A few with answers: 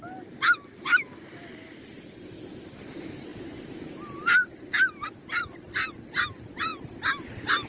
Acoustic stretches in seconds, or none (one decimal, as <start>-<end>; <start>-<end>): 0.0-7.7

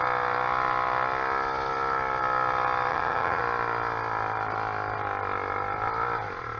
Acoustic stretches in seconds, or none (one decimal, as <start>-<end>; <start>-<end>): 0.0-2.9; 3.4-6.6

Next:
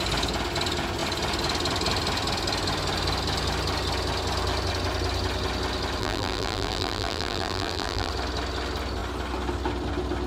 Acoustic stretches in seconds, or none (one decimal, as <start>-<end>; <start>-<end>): 0.0-6.0; 8.1-10.3

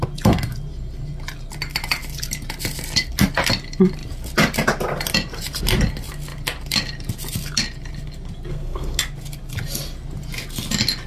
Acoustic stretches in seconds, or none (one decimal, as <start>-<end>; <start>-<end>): 0.0-8.5; 9.0-11.1